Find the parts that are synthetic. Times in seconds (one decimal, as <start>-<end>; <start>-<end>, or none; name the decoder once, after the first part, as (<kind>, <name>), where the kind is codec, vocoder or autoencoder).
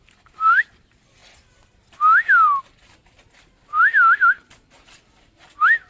none